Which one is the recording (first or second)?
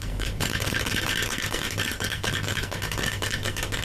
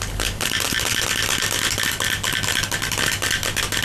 second